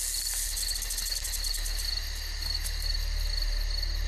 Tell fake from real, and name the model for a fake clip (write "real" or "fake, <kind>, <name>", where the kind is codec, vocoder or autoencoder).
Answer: real